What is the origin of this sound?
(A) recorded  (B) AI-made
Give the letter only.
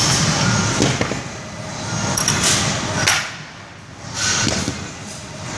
A